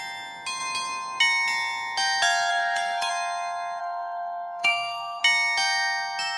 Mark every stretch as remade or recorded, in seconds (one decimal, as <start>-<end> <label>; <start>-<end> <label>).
0.0-2.5 recorded; 2.5-3.1 remade; 3.1-3.8 recorded; 3.8-5.2 remade; 5.2-6.4 recorded

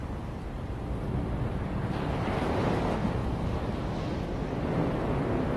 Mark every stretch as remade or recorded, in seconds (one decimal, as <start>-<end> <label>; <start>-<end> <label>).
0.0-2.8 remade; 2.8-5.6 recorded